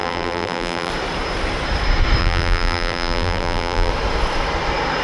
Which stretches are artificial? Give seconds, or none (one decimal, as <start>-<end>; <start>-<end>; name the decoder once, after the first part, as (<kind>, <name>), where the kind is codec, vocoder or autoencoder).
0.0-0.9 (vocoder, BigVGAN v2); 2.2-3.9